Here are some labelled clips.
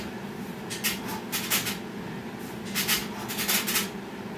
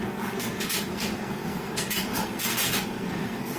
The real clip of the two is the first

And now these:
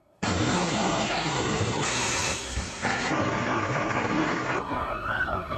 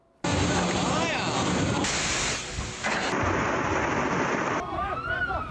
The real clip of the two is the second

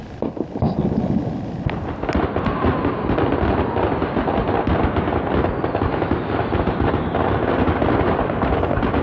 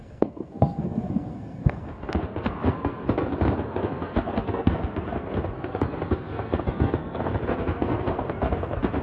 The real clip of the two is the first